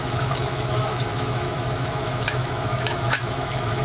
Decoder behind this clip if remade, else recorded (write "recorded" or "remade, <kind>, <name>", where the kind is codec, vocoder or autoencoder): remade, autoencoder, DAC-VAE